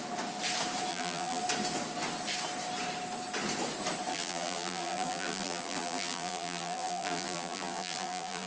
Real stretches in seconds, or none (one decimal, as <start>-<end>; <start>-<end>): 0.0-0.9; 1.4-4.1